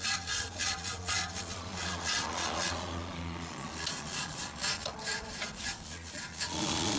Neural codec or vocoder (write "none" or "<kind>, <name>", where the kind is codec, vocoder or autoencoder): vocoder, Vocos